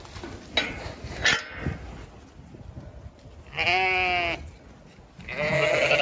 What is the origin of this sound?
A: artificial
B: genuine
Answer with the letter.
B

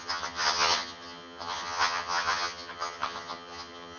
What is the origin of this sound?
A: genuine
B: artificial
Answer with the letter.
B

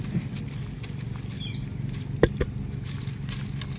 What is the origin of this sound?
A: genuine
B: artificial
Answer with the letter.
A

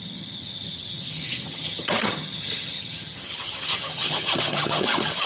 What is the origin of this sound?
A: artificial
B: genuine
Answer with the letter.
A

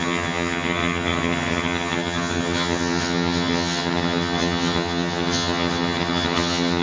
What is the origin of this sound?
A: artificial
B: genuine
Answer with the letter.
A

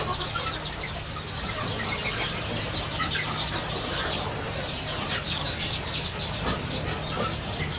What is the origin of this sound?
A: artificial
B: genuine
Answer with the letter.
B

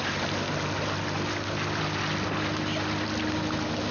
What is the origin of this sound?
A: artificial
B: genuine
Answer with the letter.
B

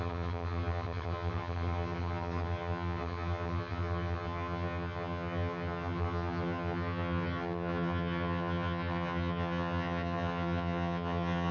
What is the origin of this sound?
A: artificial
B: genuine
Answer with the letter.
A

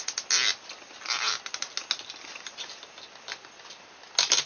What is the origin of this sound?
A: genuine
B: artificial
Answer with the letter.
A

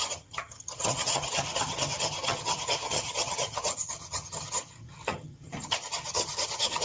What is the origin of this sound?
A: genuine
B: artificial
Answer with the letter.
B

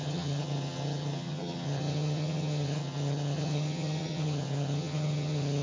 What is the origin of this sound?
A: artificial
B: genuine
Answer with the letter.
A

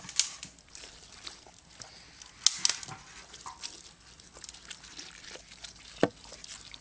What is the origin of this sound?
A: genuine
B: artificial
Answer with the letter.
A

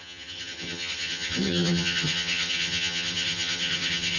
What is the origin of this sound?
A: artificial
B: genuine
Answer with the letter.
A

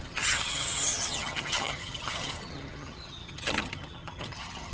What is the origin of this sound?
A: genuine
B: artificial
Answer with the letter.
B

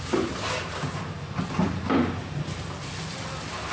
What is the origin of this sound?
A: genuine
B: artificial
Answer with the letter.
A